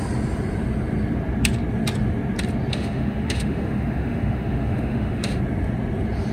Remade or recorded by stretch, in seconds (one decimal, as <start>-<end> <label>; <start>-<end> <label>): 0.0-2.7 recorded; 2.7-5.4 remade; 5.4-6.3 recorded